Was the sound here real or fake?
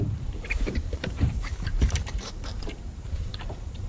fake